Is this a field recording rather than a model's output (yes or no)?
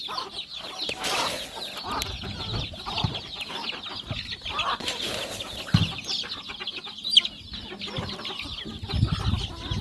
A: yes